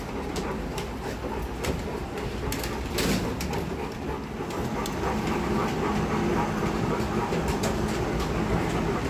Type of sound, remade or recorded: recorded